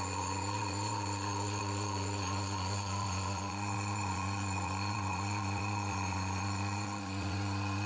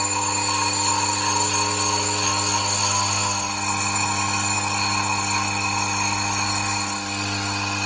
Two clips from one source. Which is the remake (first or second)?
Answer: first